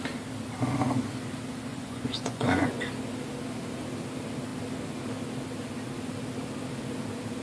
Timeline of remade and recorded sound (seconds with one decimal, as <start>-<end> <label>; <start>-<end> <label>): 0.0-1.7 recorded; 1.7-2.8 remade; 2.8-7.4 recorded